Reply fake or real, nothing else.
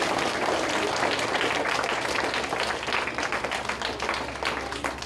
real